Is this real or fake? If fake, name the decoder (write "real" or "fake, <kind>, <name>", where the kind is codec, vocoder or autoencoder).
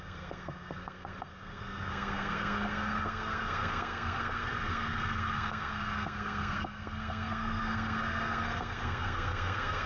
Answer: fake, codec, SNAC